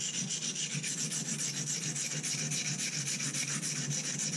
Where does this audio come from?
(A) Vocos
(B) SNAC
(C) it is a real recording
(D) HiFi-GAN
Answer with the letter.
C